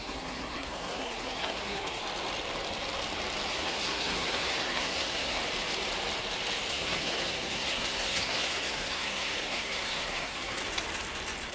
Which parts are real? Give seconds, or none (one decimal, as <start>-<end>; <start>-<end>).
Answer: 2.0-3.5; 5.4-6.7; 10.6-11.5